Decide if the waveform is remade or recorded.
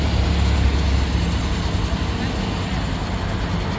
recorded